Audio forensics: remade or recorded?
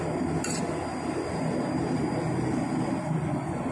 recorded